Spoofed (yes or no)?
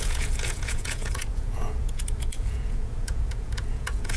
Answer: yes